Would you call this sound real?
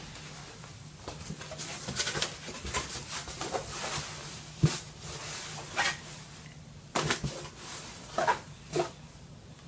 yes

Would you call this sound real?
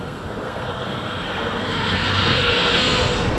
no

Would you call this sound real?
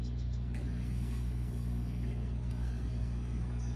no